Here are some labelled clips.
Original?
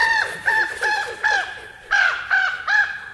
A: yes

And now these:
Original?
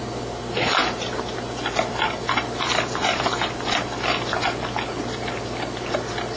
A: yes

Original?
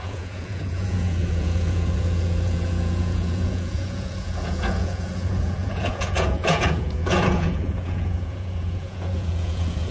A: no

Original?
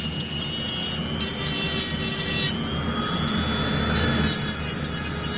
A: yes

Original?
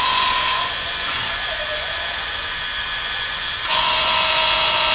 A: no